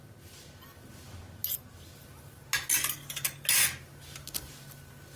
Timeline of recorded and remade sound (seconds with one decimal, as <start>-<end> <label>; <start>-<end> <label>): 0.0-5.2 recorded